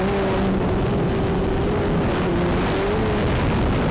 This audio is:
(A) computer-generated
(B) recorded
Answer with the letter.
B